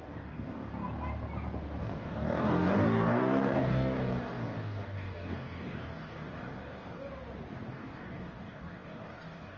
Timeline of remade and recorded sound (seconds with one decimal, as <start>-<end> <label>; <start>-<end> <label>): 0.0-0.7 remade; 0.7-1.8 recorded; 1.8-7.1 remade; 7.1-7.7 recorded; 7.7-9.6 remade